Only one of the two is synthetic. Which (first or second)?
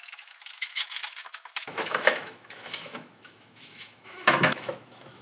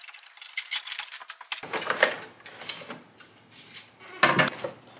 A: first